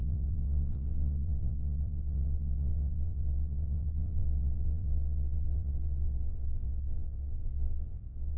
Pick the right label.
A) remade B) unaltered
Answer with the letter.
A